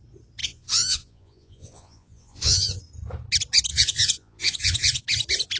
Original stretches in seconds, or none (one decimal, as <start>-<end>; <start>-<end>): 0.0-0.4; 2.8-3.7; 5.0-5.6